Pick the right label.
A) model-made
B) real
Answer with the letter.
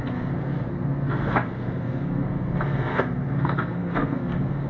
A